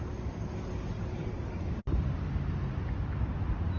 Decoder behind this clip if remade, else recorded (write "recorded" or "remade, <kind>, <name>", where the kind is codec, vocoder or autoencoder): recorded